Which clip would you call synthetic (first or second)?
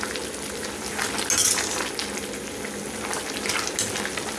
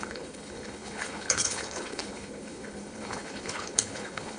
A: second